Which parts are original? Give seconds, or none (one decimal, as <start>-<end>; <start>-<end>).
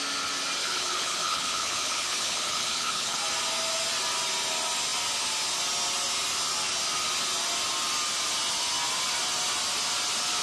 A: 0.0-0.6; 3.2-10.4